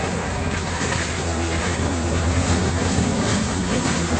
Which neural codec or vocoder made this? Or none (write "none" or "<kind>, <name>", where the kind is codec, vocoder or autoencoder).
codec, SNAC